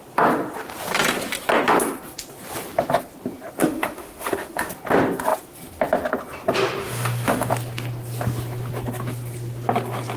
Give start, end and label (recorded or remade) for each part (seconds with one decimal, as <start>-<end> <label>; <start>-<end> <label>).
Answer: 0.0-3.6 recorded; 3.6-4.7 remade; 4.7-6.8 recorded; 6.8-7.5 remade; 7.5-10.2 recorded